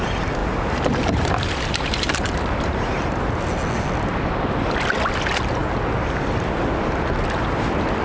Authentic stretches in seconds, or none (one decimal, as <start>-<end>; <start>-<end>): 0.0-0.4; 3.2-8.0

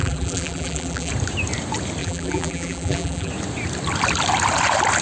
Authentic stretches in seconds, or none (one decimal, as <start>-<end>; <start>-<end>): 1.1-2.0; 3.3-5.0

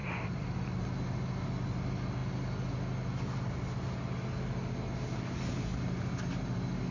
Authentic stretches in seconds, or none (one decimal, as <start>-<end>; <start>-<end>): 0.6-6.9

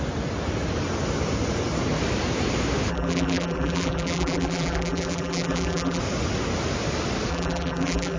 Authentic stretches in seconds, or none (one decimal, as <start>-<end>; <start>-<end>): 0.0-2.9; 6.0-7.3

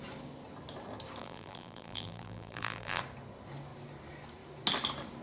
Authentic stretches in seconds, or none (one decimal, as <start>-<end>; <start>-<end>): 0.0-1.2; 3.0-5.2

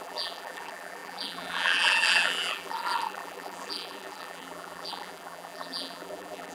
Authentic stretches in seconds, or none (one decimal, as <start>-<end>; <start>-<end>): none